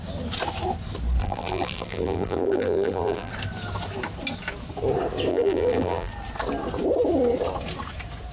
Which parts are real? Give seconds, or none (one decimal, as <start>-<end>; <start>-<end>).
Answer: 0.0-1.2; 3.3-5.3; 6.1-8.3